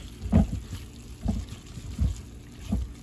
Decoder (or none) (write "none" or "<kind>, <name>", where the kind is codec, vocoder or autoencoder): none